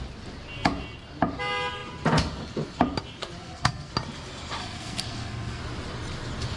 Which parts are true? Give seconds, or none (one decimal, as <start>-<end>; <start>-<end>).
0.0-3.4; 3.9-4.6; 5.6-6.6